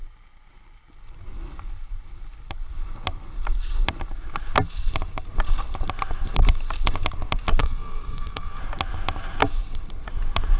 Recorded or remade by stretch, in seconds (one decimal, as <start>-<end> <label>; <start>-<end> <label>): 0.0-7.6 recorded; 7.6-8.6 remade; 8.6-10.6 recorded